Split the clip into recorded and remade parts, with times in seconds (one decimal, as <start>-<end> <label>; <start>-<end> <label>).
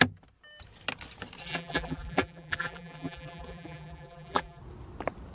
0.0-1.4 recorded; 1.4-4.6 remade; 4.6-5.3 recorded